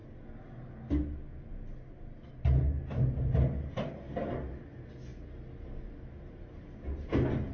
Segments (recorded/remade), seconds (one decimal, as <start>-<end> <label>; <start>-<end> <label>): 0.0-7.5 recorded